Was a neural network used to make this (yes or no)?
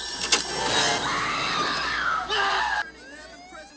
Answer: no